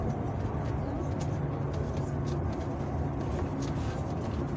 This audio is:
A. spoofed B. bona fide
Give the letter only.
B